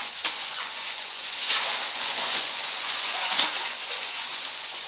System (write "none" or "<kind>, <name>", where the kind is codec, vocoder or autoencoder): vocoder, Vocos